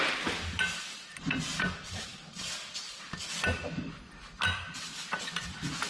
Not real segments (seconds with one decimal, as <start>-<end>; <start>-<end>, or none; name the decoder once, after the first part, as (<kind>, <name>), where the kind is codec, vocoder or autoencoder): none